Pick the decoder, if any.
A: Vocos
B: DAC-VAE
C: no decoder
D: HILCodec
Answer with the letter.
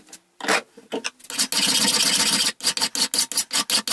C